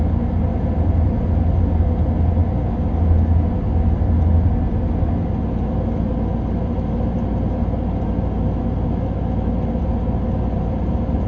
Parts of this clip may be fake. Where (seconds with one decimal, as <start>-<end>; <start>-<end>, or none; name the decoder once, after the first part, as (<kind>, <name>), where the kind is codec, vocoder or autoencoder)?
0.5-1.6 (vocoder, BigVGAN v2)